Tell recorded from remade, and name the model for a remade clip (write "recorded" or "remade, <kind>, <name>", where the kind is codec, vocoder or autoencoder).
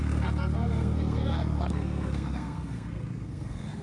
remade, codec, SNAC